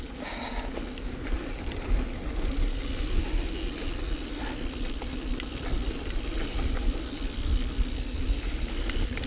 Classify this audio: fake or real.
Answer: real